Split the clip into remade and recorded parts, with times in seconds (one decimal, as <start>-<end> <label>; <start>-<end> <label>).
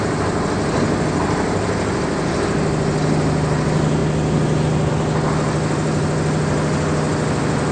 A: 0.0-7.7 recorded